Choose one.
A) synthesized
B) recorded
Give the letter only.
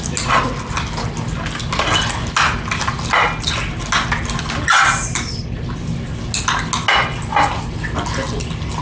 B